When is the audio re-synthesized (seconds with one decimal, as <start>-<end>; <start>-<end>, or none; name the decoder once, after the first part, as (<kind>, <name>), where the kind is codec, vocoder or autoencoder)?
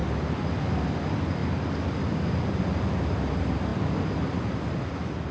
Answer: 0.0-0.6 (vocoder, BigVGAN v2)